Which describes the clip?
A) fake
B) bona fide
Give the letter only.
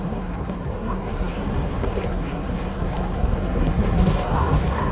A